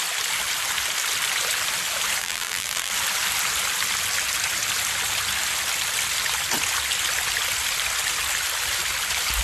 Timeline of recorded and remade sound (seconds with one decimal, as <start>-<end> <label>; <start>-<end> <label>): 0.0-2.2 recorded; 2.2-2.9 remade; 2.9-9.4 recorded